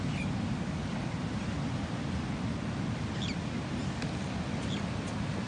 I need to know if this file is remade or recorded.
recorded